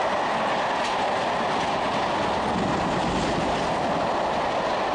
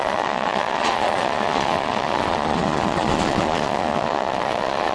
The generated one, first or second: second